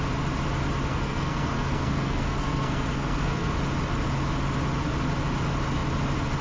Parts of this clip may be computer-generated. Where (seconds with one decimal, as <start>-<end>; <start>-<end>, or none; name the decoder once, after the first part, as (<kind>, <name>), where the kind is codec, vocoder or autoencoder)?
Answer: 0.9-3.5 (codec, SNAC)